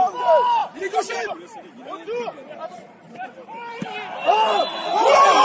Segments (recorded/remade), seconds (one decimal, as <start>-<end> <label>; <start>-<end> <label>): 0.0-0.6 recorded; 0.6-3.8 remade; 3.8-5.4 recorded